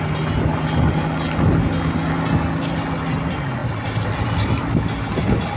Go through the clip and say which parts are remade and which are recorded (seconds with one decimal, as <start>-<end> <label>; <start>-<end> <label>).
0.0-3.6 recorded; 3.6-4.5 remade; 4.5-5.6 recorded